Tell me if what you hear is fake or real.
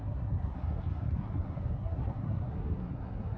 fake